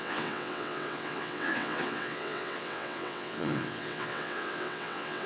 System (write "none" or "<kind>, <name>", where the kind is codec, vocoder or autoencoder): vocoder, WaveNeXt